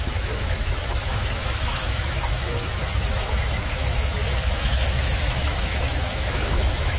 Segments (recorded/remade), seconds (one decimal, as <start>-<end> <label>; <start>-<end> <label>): 0.0-7.0 remade